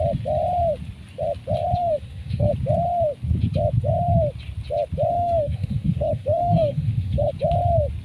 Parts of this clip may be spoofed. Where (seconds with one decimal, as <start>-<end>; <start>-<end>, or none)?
1.8-2.5; 5.1-7.3